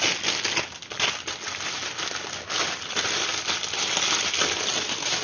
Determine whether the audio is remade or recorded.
recorded